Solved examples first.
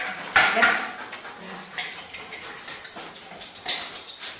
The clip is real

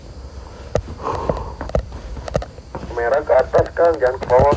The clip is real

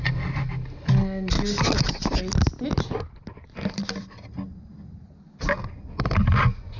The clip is real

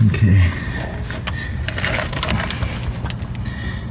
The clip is real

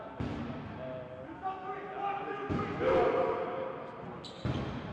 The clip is real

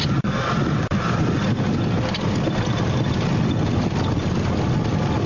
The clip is real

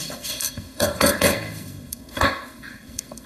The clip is fake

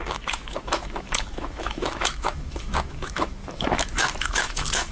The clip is fake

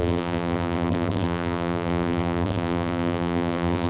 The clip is fake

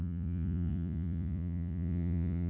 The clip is fake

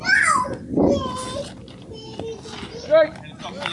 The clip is real